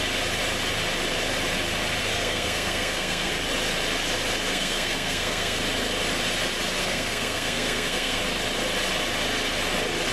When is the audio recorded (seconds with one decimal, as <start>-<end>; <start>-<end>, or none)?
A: 0.0-2.0; 3.3-4.5; 5.6-6.8; 8.2-10.1